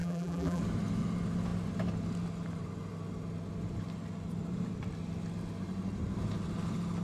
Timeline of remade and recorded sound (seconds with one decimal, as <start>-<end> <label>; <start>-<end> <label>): 0.0-0.6 remade; 0.6-7.0 recorded

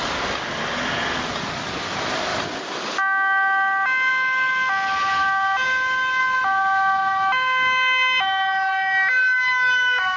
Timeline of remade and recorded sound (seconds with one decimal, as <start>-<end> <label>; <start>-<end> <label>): 0.0-10.2 recorded